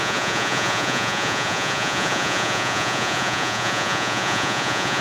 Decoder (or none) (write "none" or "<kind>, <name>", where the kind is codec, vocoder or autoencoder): vocoder, Vocos